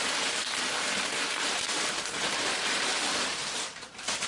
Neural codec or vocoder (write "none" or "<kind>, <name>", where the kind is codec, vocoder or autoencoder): vocoder, BigVGAN v2